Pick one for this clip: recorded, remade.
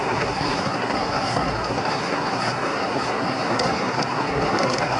remade